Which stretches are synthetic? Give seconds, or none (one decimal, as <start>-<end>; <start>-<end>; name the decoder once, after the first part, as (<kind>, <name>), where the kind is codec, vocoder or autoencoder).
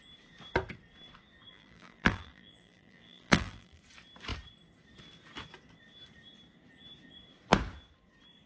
1.5-3.8 (vocoder, BigVGAN v2)